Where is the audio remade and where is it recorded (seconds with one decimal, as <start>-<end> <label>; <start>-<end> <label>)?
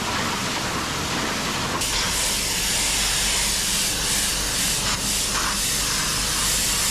0.0-6.9 recorded